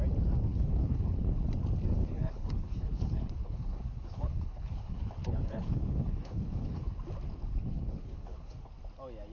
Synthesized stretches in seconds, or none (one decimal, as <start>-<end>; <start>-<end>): 0.5-1.4; 2.0-6.9; 7.6-8.7